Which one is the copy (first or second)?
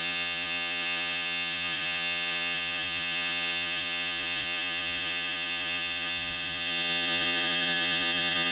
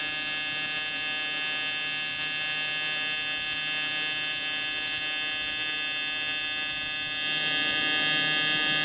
first